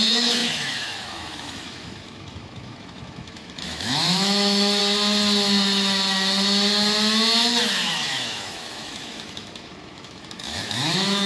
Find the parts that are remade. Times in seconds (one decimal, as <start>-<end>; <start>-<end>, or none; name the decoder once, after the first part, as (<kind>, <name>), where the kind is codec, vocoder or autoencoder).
0.0-4.8 (autoencoder, DAC-VAE); 7.6-11.3